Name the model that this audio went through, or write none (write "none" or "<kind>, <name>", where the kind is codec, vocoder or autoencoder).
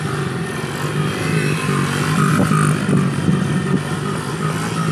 none